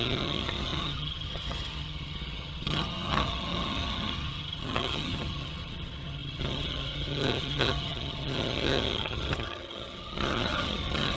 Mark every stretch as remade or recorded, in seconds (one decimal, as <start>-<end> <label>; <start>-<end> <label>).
0.0-11.2 remade